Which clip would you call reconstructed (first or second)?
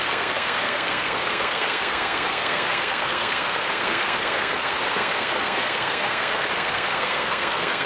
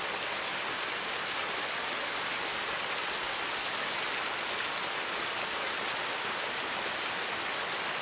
first